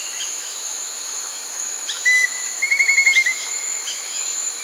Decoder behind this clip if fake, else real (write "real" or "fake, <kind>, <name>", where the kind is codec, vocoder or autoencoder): fake, autoencoder, DAC-VAE